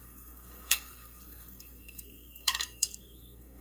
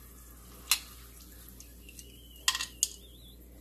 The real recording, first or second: second